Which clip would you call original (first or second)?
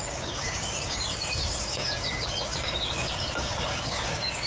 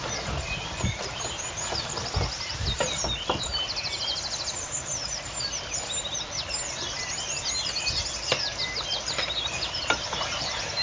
second